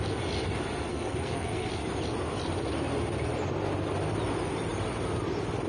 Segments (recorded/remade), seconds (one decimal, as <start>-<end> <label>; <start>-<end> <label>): 0.0-0.9 recorded; 0.9-1.7 remade; 1.7-5.7 recorded